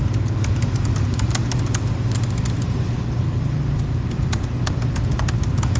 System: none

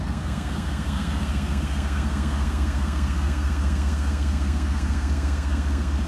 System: codec, SNAC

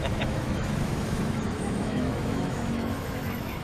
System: autoencoder, DAC-VAE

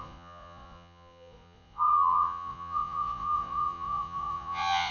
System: vocoder, Vocos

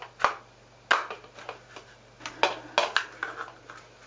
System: none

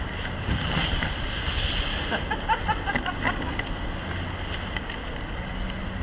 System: none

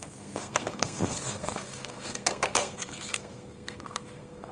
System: codec, SNAC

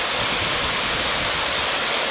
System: none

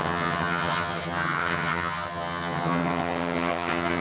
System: vocoder, HiFi-GAN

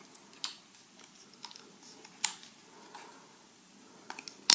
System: none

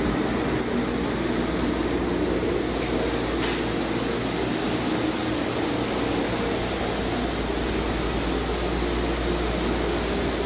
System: none